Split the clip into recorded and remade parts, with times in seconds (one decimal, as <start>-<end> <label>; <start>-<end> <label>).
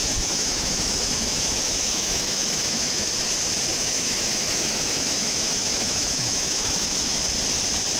0.0-3.1 remade; 3.1-3.7 recorded; 3.7-7.2 remade; 7.2-8.0 recorded